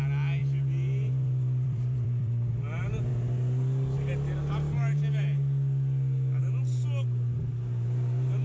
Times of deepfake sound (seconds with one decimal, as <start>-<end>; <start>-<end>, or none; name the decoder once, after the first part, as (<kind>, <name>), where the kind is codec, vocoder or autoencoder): 0.4-2.5 (vocoder, BigVGAN v2)